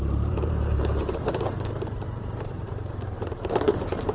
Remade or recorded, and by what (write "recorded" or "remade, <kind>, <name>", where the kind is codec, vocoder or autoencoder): remade, vocoder, BigVGAN v2